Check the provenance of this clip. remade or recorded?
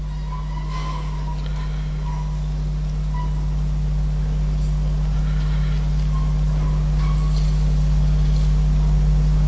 recorded